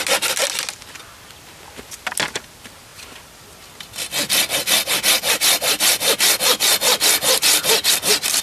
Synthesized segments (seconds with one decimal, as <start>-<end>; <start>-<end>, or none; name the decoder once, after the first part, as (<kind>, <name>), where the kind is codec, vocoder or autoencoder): none